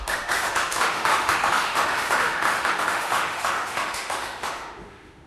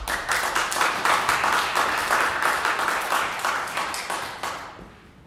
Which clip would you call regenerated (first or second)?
first